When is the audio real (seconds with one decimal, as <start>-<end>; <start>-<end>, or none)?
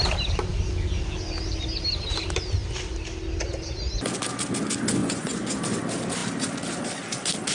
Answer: 0.0-5.0; 5.6-7.5